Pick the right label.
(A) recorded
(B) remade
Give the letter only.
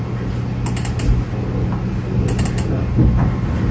A